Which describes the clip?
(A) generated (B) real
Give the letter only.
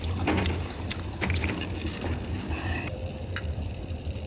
A